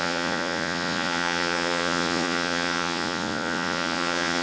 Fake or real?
fake